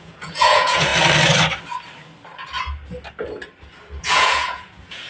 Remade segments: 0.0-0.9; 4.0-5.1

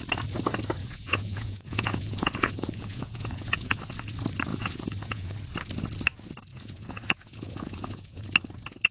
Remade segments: 0.8-3.8; 4.5-5.3; 6.5-8.2

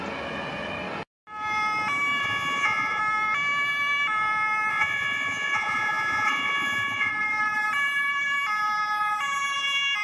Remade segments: 2.2-3.0; 4.7-7.1

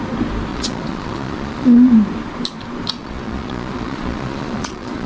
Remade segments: 0.5-1.9; 3.0-5.1

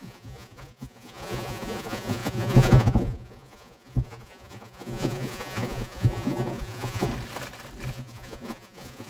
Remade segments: 0.0-7.1; 7.9-9.1

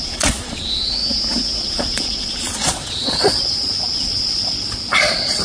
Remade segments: 0.0-1.0; 1.6-5.4

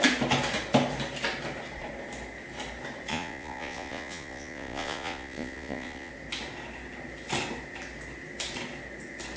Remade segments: 3.1-6.1

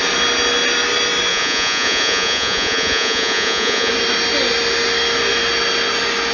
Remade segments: 1.3-3.9